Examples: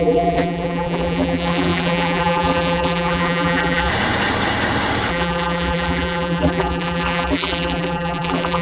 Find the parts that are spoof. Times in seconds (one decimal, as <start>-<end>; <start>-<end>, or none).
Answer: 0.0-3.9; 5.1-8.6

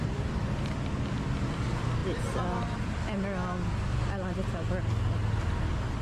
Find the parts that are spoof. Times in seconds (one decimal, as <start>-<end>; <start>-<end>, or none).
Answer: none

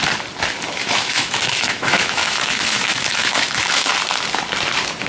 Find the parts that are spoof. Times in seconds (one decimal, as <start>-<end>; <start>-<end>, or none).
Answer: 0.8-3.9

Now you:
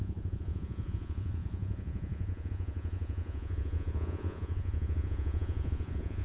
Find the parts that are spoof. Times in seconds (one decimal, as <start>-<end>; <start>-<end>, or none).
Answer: 0.0-6.2

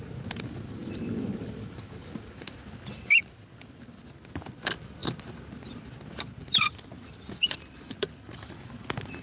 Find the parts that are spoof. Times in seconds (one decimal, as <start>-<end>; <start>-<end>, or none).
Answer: none